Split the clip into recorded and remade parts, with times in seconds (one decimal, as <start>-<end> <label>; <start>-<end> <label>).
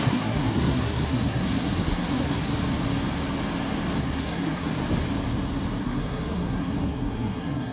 0.0-2.5 remade; 2.5-4.0 recorded; 4.0-4.8 remade; 4.8-5.8 recorded; 5.8-7.7 remade